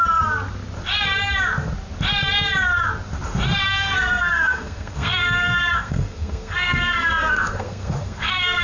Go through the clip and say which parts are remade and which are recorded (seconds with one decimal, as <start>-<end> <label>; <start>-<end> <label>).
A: 0.0-3.7 recorded; 3.7-8.6 remade